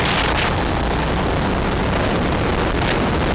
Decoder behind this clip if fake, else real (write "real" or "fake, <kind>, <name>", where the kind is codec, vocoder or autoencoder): real